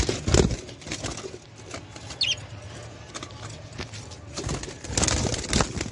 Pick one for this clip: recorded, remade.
recorded